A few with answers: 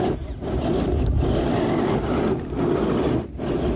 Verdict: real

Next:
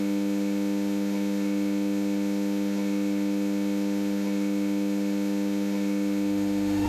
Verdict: fake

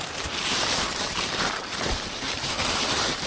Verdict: fake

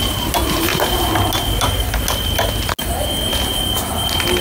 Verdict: real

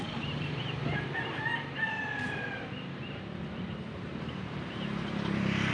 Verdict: fake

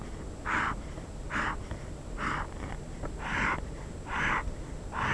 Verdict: real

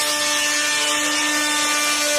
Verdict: real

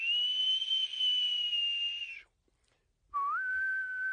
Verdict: real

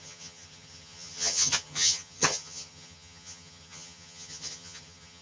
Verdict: fake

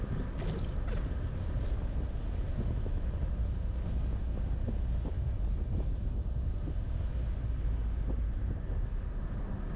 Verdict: real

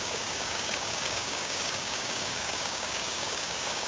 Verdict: fake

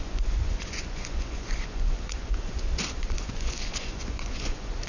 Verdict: fake